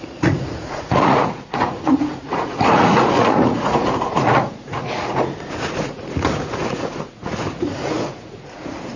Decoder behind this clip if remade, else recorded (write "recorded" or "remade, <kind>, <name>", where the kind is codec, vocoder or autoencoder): remade, vocoder, Vocos